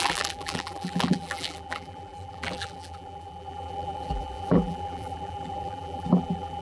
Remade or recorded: remade